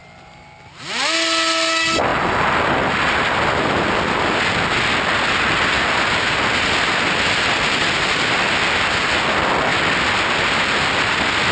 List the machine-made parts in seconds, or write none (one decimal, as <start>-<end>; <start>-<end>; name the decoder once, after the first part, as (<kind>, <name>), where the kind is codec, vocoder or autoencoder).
none